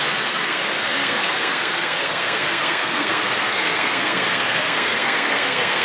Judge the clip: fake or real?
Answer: fake